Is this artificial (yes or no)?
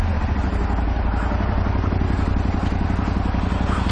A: no